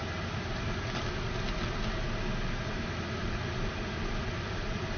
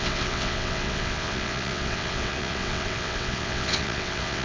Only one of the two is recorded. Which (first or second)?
first